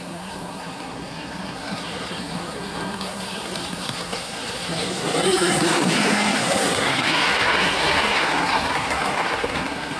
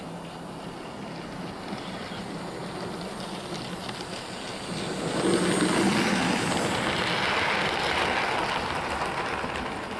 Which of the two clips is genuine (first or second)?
second